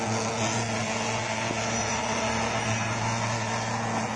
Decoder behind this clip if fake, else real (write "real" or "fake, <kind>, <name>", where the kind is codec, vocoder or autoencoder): real